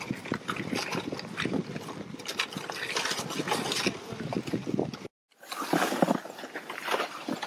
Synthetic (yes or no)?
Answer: no